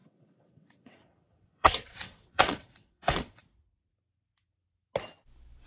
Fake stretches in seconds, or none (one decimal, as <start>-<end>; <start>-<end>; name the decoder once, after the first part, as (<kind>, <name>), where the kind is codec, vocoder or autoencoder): 0.0-3.4 (vocoder, WaveNeXt)